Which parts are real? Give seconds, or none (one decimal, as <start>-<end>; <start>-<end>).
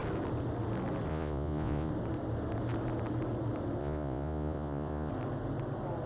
0.0-1.1; 1.9-3.8; 5.1-6.1